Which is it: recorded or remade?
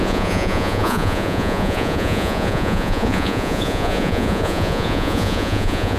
remade